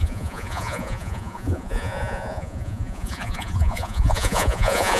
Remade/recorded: remade